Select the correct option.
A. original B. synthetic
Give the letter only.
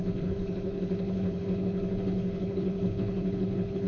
B